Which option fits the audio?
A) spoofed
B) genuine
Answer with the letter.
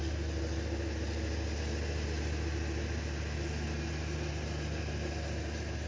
B